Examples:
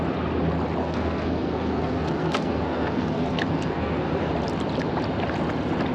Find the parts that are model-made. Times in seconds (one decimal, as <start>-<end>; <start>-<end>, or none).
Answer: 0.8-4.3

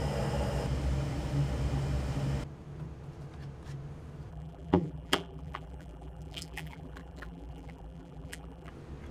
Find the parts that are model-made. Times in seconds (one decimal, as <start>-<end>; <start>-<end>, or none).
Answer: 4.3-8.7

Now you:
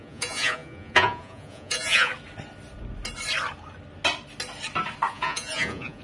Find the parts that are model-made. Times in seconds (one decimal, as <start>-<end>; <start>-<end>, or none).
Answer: 0.0-2.1; 5.1-6.0